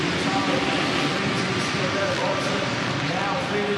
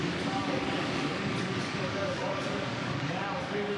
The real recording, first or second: first